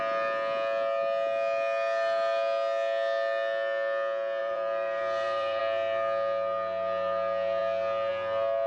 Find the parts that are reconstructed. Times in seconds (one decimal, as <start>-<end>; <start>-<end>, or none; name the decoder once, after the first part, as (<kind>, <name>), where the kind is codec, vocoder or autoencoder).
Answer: 4.4-5.6 (vocoder, BigVGAN v2)